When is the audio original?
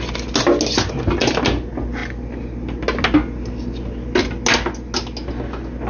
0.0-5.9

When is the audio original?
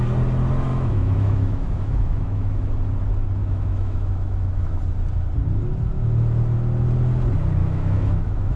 0.0-0.7; 2.7-3.4; 4.8-7.6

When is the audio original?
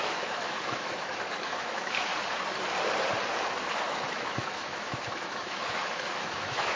2.1-3.7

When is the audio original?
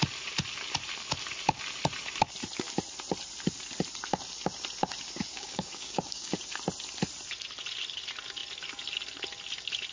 0.0-5.3; 6.4-9.9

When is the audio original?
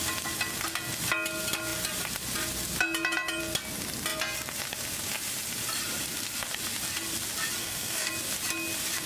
0.0-7.6; 8.1-9.1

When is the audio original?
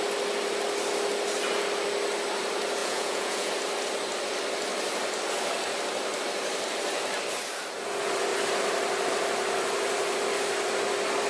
0.0-2.8; 3.5-11.3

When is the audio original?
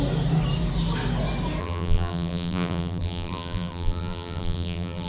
0.0-1.6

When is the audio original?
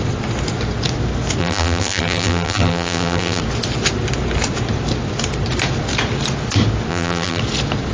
0.0-1.4; 3.4-6.9; 7.4-7.9